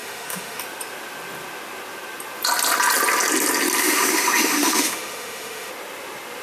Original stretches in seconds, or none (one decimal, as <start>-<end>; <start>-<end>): 0.6-3.8; 5.7-6.4